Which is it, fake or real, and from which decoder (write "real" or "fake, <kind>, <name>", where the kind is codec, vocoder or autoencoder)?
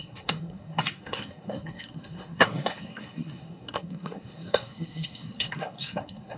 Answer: fake, codec, SNAC